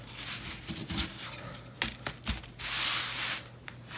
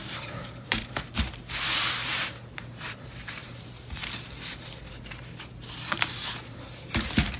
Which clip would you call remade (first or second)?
second